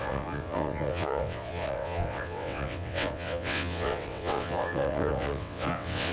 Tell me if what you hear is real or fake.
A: fake